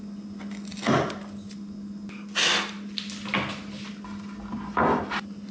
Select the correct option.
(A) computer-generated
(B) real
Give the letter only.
B